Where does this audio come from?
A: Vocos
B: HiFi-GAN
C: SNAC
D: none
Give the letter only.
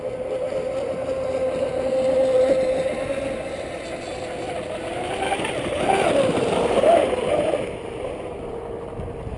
D